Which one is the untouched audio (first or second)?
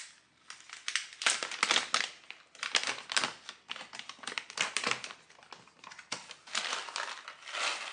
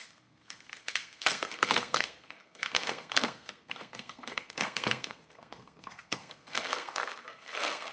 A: first